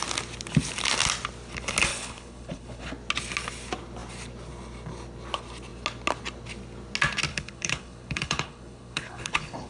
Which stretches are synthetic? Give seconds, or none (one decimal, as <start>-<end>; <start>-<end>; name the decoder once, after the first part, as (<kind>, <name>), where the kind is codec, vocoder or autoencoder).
1.9-2.9 (codec, HILCodec); 7.3-9.7